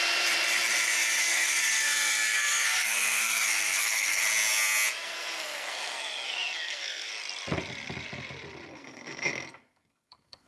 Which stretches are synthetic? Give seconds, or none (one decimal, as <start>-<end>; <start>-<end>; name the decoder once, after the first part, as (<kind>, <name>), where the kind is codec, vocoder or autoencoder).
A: 1.2-4.2 (codec, SNAC); 5.0-7.1; 8.7-10.5